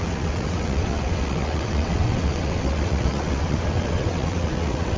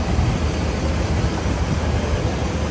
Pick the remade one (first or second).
first